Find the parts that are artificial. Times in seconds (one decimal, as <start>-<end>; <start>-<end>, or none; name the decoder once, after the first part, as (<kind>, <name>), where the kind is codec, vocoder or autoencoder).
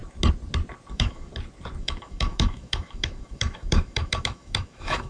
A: 0.9-1.3 (autoencoder, DAC-VAE); 1.8-5.1